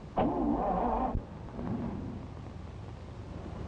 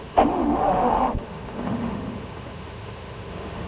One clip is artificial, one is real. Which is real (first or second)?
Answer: first